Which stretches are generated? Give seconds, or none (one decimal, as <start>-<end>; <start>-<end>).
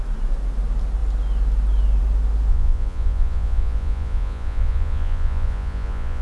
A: 2.5-6.2